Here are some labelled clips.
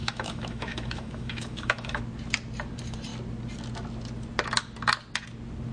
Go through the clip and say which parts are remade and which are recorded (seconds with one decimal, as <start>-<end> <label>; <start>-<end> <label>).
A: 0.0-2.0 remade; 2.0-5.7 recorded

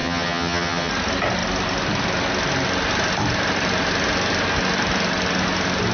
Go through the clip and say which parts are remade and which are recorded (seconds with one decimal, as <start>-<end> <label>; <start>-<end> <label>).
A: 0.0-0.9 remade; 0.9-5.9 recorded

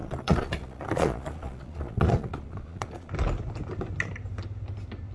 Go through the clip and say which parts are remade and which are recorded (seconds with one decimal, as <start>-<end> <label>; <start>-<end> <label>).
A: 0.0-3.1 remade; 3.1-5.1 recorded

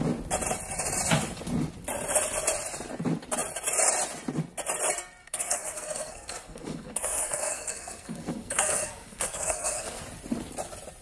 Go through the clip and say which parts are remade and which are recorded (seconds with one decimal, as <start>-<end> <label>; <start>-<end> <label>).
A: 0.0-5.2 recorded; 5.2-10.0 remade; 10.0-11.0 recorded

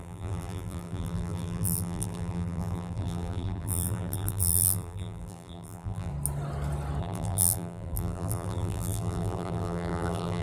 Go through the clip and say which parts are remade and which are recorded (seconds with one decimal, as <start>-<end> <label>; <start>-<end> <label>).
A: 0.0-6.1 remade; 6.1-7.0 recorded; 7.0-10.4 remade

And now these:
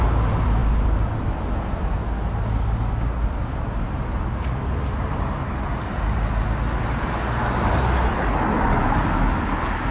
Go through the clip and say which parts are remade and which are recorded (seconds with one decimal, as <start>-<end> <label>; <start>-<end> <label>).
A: 0.0-9.9 recorded

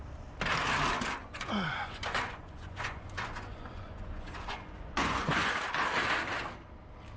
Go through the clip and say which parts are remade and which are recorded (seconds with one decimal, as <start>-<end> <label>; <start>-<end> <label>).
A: 0.0-1.2 recorded; 1.2-5.5 remade; 5.5-7.2 recorded

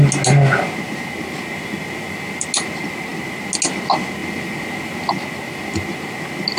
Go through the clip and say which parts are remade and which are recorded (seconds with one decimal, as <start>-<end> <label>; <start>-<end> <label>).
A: 0.0-6.6 recorded